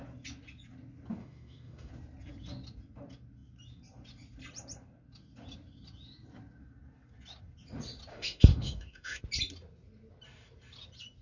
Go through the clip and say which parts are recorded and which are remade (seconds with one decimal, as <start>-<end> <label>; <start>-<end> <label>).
0.0-1.2 recorded; 1.2-1.9 remade; 1.9-8.1 recorded; 8.1-9.2 remade; 9.2-11.2 recorded